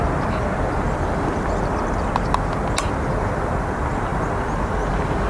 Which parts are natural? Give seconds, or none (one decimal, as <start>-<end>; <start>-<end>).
0.0-5.3